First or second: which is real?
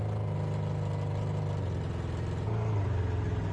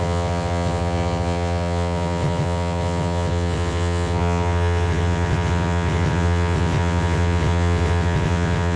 first